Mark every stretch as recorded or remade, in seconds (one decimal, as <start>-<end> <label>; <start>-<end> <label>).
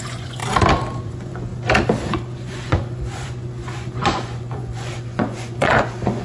0.0-0.4 remade; 0.4-1.0 recorded; 1.0-1.5 remade; 1.5-2.1 recorded; 2.1-6.2 remade